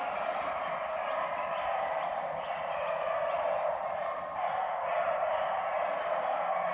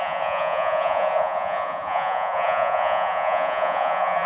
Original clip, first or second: first